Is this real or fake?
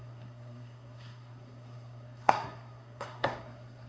fake